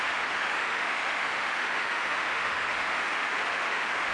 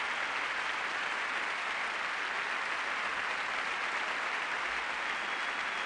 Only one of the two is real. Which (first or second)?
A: second